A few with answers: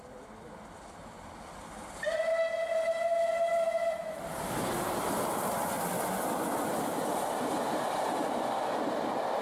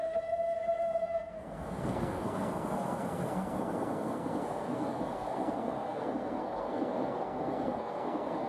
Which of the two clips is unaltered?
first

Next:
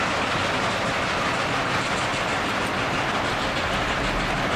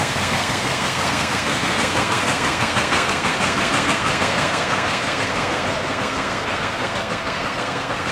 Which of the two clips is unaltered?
first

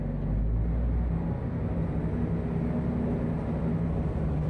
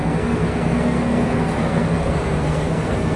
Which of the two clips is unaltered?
first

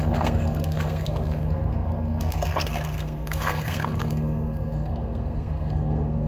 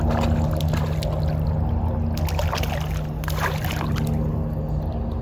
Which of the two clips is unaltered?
second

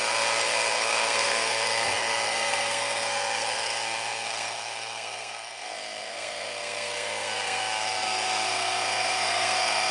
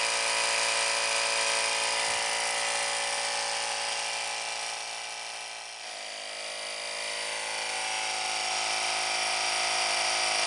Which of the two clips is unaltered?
second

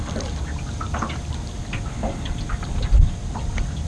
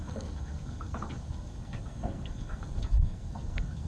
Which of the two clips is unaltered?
first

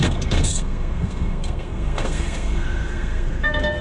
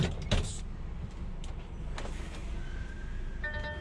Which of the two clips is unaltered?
second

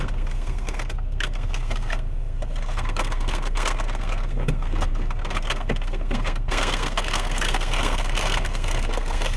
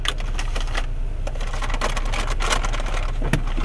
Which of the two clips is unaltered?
second